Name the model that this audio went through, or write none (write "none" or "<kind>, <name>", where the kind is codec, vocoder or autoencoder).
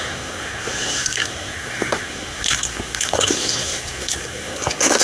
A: codec, SNAC